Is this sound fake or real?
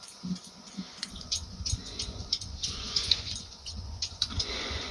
fake